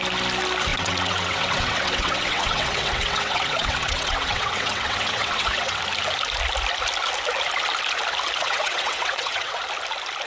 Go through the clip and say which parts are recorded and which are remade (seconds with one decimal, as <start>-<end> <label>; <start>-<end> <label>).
0.0-0.7 recorded; 0.7-5.8 remade; 5.8-8.4 recorded; 8.4-9.6 remade; 9.6-10.3 recorded